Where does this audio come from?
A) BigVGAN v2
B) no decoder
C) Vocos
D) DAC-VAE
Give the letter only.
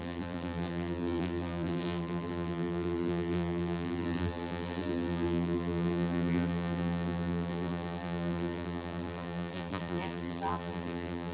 A